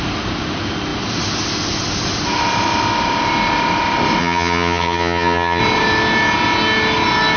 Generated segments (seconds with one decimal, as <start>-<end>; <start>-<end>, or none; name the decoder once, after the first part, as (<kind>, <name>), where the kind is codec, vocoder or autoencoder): 4.2-5.6 (vocoder, HiFi-GAN)